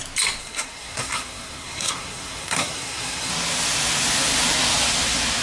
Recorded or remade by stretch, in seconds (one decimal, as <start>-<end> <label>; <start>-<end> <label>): 0.0-0.4 recorded; 0.4-3.3 remade; 3.3-5.4 recorded